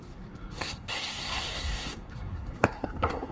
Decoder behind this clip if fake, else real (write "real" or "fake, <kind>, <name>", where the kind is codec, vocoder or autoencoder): fake, codec, SNAC